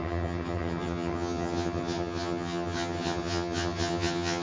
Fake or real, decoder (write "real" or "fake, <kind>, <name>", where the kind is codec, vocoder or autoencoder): fake, vocoder, HiFi-GAN